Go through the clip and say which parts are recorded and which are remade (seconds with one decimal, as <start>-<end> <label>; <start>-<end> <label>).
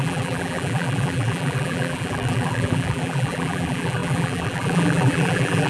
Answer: 0.0-5.7 remade